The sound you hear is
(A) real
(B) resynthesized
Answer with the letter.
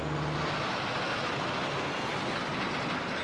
A